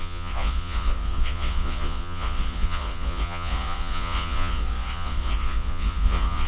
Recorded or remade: remade